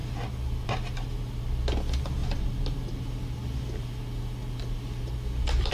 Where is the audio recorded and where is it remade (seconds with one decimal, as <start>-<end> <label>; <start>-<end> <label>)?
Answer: 0.0-1.4 remade; 1.4-2.2 recorded; 2.2-5.7 remade